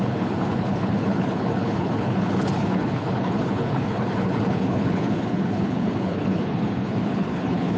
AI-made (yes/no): yes